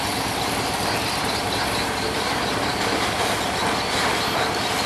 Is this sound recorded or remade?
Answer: remade